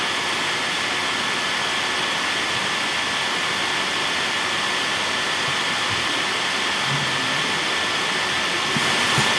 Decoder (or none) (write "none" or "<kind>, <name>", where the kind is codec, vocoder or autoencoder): none